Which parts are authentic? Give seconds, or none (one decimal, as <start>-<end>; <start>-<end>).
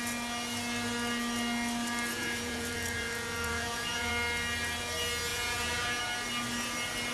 0.0-2.1; 4.1-5.3; 6.0-7.1